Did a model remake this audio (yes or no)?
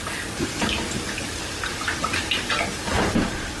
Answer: no